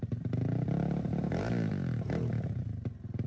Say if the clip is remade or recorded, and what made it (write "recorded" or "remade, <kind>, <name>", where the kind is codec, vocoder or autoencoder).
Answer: recorded